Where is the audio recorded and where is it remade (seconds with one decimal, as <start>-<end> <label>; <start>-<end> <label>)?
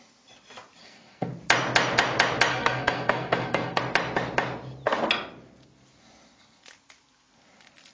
0.0-0.8 recorded; 0.8-1.3 remade; 1.3-2.5 recorded; 2.5-3.8 remade; 3.8-7.9 recorded